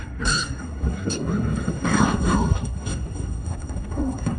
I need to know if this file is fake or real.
fake